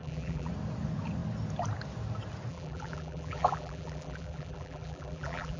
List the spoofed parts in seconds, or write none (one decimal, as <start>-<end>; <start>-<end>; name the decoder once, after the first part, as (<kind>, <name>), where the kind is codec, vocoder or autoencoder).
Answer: 0.0-0.5 (vocoder, BigVGAN v2); 2.5-5.6

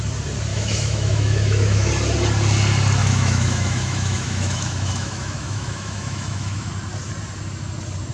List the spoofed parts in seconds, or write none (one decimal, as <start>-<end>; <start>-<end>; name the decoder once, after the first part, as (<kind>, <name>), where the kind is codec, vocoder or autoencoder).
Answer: 0.5-1.9 (autoencoder, DAC-VAE); 3.0-6.7

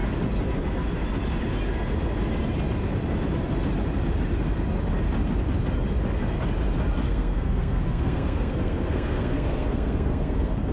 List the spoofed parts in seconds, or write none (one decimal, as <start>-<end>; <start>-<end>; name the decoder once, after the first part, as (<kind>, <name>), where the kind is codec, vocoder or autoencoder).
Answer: 7.0-10.7 (codec, SNAC)

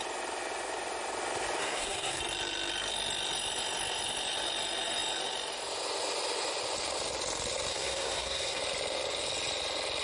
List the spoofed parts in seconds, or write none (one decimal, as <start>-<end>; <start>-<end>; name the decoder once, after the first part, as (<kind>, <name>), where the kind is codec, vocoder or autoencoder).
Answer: 1.6-2.2 (codec, SNAC); 7.7-8.6

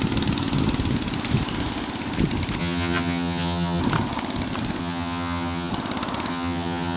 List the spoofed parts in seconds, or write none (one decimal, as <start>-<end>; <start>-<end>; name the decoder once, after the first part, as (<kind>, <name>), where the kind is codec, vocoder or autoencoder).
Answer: 2.6-3.8 (vocoder, HiFi-GAN); 4.8-5.7; 6.3-7.0

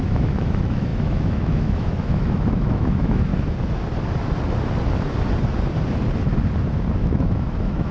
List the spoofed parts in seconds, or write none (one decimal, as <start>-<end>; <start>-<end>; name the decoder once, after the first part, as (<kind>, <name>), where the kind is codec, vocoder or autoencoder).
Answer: 0.0-3.3 (autoencoder, DAC-VAE); 7.0-7.9